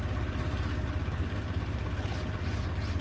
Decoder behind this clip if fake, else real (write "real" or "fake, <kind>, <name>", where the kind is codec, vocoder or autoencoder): real